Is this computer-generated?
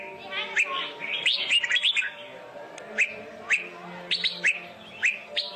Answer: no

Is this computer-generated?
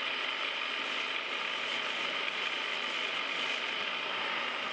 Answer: no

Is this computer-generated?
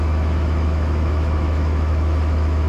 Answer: yes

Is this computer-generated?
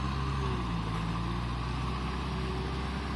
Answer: no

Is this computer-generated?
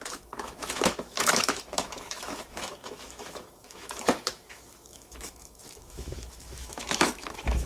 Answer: yes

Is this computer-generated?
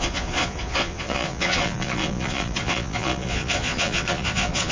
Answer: yes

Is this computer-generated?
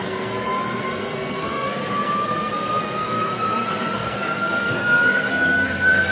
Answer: yes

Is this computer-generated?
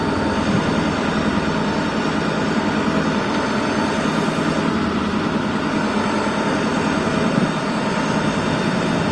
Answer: no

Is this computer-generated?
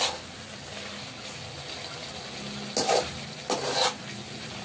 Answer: no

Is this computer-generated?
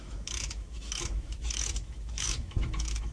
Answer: yes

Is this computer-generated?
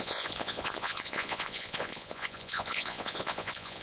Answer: yes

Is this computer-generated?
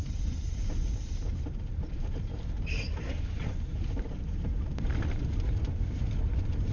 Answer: yes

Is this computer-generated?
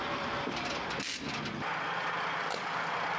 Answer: no